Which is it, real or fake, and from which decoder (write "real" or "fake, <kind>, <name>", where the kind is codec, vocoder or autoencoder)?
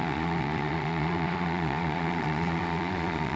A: fake, vocoder, Vocos